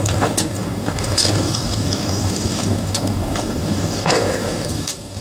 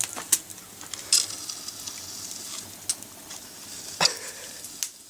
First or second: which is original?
second